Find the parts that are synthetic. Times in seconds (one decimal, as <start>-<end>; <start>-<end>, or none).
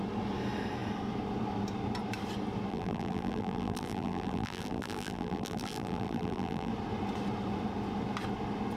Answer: 2.7-6.7